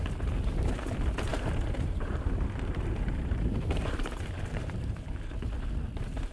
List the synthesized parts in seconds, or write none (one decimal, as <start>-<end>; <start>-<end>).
1.3-5.1